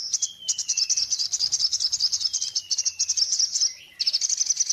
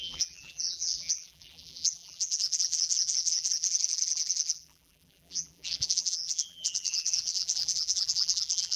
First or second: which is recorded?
first